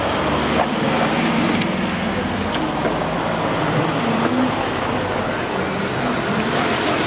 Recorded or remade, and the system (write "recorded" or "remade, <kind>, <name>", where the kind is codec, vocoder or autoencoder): recorded